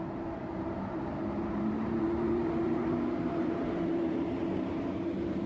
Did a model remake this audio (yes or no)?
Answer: yes